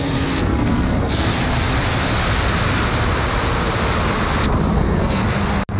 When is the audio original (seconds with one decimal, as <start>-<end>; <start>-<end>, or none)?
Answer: 1.3-4.7; 5.2-5.8